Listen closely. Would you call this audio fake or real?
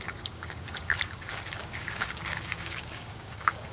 fake